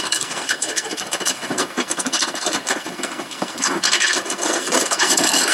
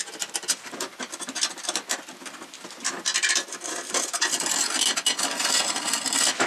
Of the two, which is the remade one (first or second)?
first